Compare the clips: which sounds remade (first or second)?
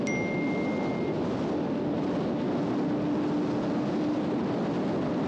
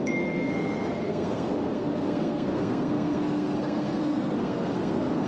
second